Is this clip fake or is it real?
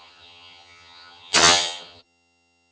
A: fake